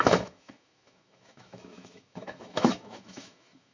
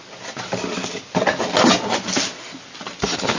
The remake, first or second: first